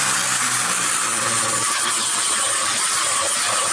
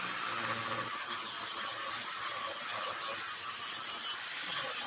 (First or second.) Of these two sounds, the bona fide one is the second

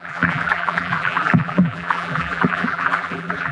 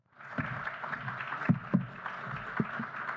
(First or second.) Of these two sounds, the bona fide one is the second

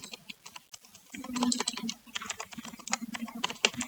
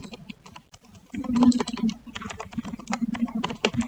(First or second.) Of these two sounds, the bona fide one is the first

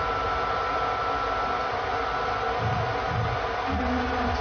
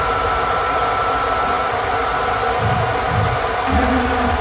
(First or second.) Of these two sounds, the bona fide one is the first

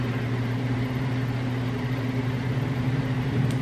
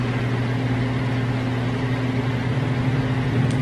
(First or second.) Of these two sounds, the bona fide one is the second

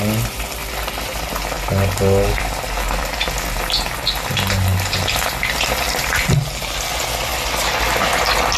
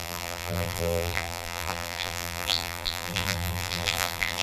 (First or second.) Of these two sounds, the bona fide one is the first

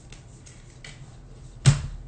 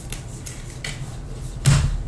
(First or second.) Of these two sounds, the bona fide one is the first